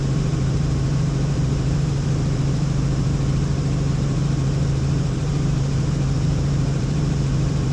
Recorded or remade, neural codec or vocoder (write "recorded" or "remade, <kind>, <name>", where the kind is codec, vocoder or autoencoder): remade, vocoder, BigVGAN v2